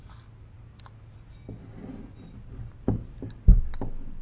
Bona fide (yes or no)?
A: yes